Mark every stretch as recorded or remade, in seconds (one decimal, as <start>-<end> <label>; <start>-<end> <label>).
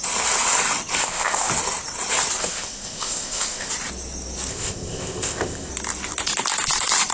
0.0-1.0 recorded; 1.0-1.5 remade; 1.5-2.4 recorded; 2.4-3.7 remade; 3.7-4.5 recorded; 4.5-5.7 remade; 5.7-7.1 recorded